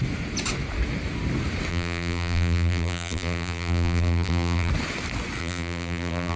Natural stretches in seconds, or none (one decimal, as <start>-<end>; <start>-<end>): 0.0-1.7; 4.7-5.4

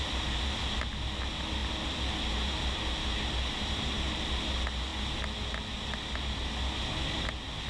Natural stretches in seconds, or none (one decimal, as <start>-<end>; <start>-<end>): 0.0-7.7

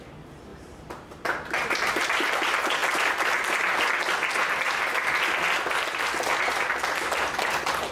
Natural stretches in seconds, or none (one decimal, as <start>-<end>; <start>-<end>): 0.0-0.5; 2.3-6.3; 6.8-7.9

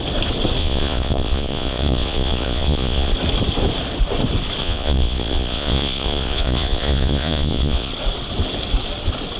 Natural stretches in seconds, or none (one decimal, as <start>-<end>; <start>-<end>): 0.0-0.6; 3.1-4.6; 7.9-9.4

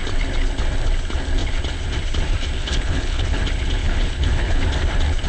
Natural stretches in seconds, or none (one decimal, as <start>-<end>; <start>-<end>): 0.0-2.6; 3.4-3.8; 4.6-5.3

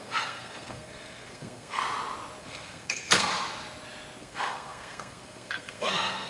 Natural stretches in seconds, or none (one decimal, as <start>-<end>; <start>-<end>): 1.8-2.4; 3.3-4.2

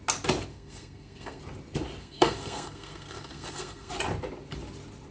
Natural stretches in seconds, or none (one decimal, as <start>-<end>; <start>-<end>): 0.0-0.5; 1.4-2.0; 3.9-5.1

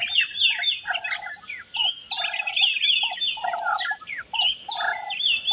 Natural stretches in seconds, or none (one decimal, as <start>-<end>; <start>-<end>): 0.0-5.5